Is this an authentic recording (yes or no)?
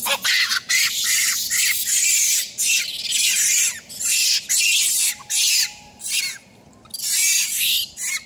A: yes